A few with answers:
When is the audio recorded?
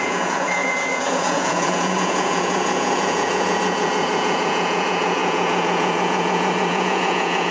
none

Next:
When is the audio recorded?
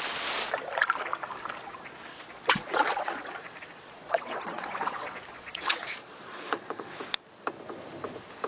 0.0-2.1; 7.0-8.5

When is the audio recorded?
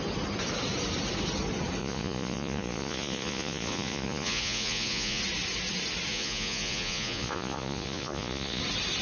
0.0-1.8; 5.2-6.1; 8.6-9.0